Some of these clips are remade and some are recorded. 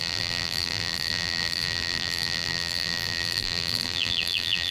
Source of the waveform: remade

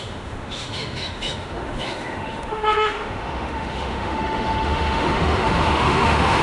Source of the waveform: remade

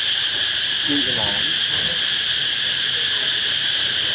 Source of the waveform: recorded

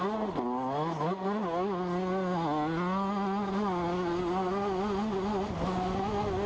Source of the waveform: recorded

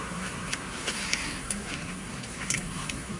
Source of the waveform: remade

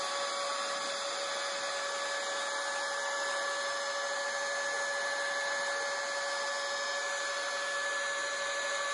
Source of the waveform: recorded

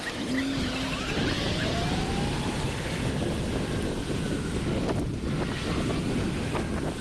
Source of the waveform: recorded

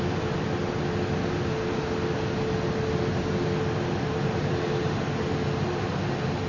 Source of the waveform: recorded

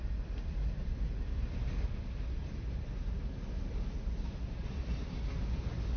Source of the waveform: recorded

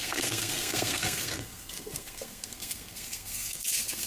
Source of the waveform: remade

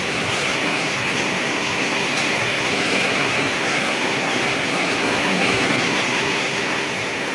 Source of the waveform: remade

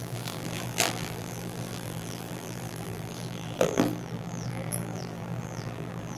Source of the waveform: remade